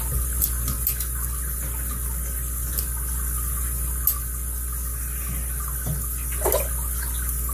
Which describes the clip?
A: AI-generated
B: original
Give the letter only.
B